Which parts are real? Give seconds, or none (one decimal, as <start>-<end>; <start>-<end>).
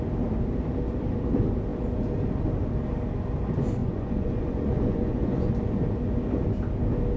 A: 0.0-3.8; 5.5-7.2